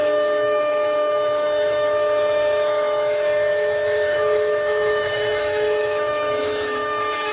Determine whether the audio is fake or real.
fake